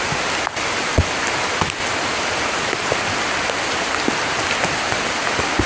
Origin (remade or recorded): recorded